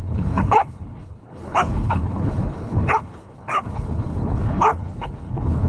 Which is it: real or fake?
fake